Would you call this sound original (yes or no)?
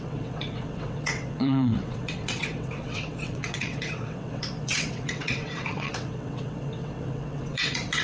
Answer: no